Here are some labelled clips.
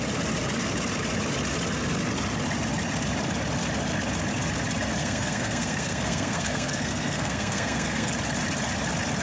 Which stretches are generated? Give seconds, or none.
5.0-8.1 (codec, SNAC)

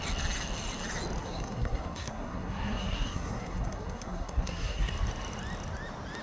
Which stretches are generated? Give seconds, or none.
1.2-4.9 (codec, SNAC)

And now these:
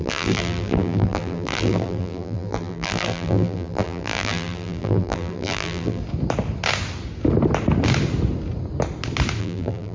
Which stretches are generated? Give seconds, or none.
0.0-6.0 (vocoder, BigVGAN v2); 9.4-9.9

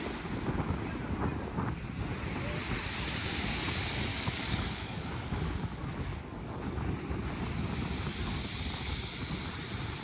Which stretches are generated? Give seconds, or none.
4.1-6.8 (codec, DAC)

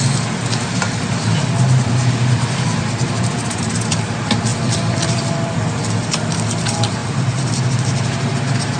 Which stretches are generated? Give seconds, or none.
2.0-3.3 (vocoder, BigVGAN v2); 4.5-5.8

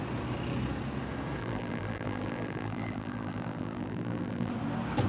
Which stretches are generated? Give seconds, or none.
1.4-4.5 (vocoder, BigVGAN v2)

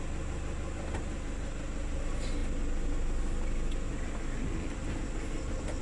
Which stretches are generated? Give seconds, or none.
none

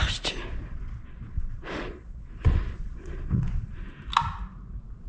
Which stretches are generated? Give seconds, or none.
0.7-3.8 (vocoder, Vocos)